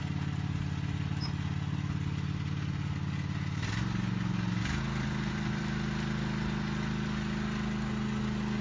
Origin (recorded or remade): recorded